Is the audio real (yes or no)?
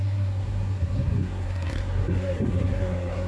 no